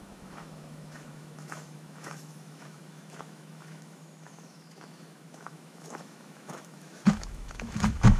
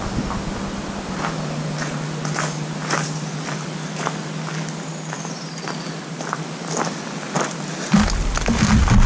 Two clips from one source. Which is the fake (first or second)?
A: first